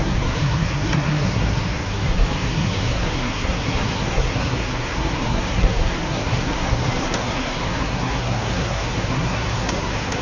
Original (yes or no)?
no